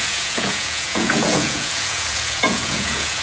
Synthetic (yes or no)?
yes